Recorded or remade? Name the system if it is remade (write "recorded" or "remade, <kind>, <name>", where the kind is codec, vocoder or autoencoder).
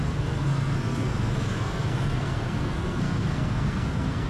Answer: remade, codec, SNAC